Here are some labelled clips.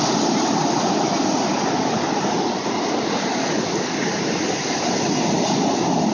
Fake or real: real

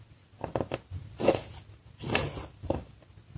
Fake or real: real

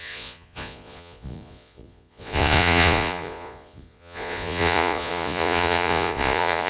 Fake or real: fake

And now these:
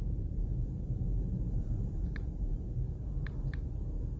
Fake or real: fake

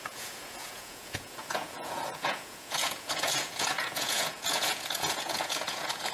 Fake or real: fake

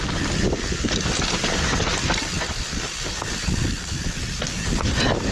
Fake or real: real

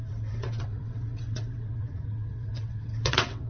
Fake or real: fake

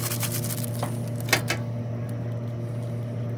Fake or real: real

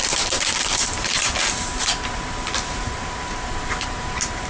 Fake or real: fake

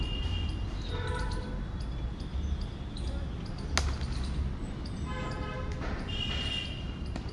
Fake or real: real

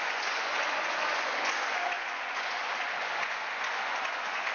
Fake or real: fake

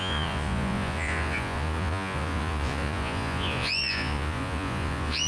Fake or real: fake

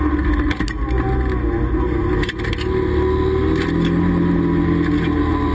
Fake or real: real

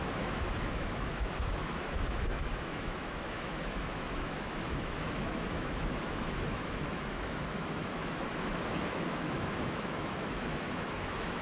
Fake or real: fake